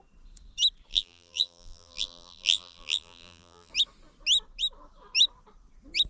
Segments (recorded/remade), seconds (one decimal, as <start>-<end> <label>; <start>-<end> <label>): 0.0-0.9 recorded; 0.9-3.7 remade; 3.7-6.1 recorded